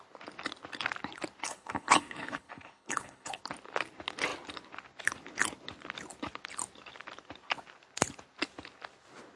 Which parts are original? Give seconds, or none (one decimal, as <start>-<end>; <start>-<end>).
0.0-1.4; 3.4-9.4